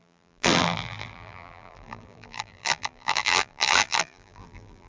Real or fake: fake